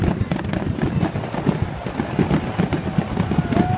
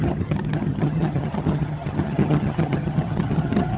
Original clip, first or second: first